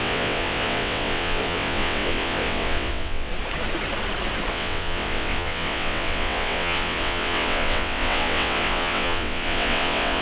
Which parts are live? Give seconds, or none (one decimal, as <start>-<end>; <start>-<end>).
3.3-4.5